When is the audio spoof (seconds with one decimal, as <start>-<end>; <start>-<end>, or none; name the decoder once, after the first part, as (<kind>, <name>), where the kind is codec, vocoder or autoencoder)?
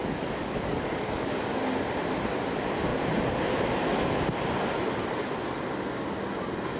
0.0-2.0 (codec, DAC)